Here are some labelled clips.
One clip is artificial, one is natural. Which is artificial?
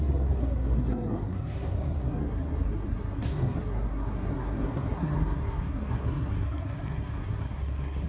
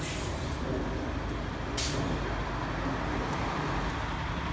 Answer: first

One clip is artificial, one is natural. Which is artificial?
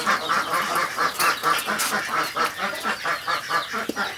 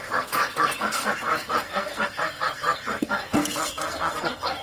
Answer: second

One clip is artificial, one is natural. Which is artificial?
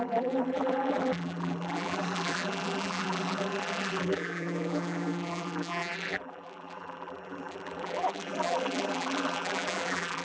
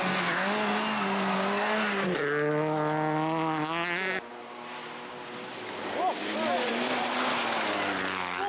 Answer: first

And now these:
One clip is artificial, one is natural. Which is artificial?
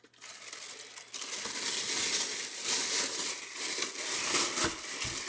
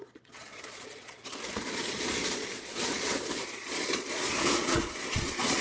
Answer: second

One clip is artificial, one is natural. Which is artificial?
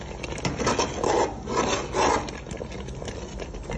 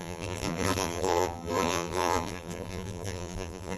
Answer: second